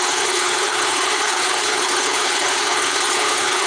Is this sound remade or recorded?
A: remade